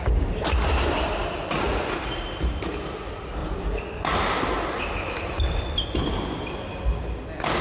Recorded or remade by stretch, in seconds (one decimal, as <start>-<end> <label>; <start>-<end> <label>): 0.0-3.4 recorded; 3.4-4.0 remade; 4.0-7.6 recorded